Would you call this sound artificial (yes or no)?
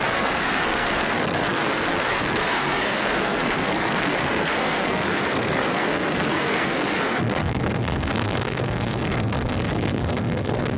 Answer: yes